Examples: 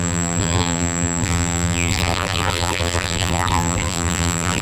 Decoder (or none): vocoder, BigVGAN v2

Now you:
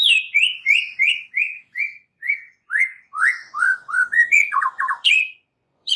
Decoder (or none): vocoder, Vocos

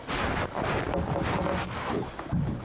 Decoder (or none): none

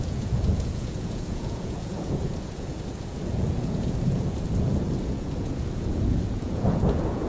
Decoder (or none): vocoder, Vocos